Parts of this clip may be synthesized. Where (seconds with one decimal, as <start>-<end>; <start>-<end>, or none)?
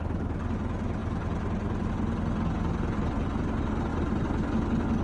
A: none